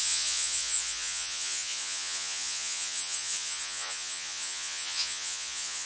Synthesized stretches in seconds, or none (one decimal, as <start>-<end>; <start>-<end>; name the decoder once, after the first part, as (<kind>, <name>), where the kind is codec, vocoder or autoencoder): 0.0-5.9 (vocoder, Vocos)